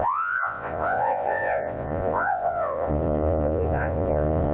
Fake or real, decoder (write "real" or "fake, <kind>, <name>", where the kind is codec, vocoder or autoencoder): fake, vocoder, Vocos